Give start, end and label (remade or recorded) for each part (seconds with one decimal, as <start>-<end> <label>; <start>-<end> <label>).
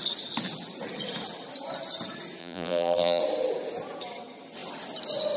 0.0-2.4 recorded; 2.4-3.2 remade; 3.2-5.4 recorded